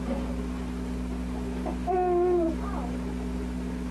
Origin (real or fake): real